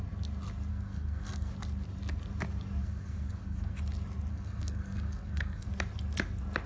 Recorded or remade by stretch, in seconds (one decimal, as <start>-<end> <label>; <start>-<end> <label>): 0.0-0.7 recorded; 0.7-1.5 remade; 1.5-2.8 recorded; 2.8-3.8 remade; 3.8-4.3 recorded; 4.3-5.7 remade; 5.7-6.7 recorded

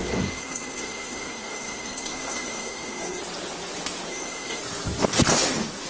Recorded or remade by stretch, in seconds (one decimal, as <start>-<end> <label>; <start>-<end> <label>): 0.0-3.2 remade; 3.2-4.1 recorded; 4.1-4.6 remade; 4.6-5.9 recorded

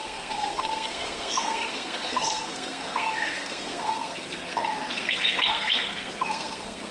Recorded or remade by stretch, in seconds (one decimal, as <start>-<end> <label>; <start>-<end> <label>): 0.0-6.9 remade

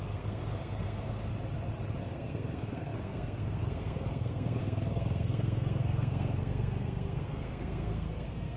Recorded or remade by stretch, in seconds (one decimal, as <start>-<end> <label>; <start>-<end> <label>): 0.0-1.3 remade; 1.3-2.0 recorded; 2.0-8.6 remade